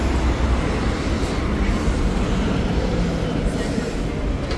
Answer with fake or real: real